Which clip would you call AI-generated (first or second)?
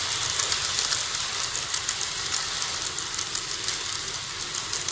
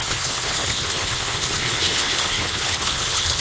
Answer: second